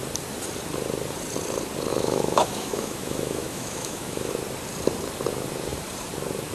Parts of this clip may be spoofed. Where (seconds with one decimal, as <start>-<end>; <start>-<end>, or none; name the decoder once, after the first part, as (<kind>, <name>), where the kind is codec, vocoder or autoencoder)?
1.9-4.3 (autoencoder, DAC-VAE)